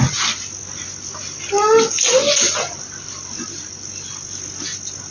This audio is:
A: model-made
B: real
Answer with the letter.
B